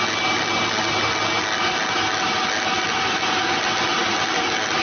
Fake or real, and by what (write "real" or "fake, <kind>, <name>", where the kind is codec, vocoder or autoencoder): real